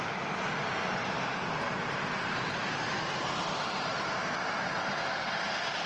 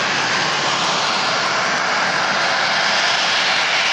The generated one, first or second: first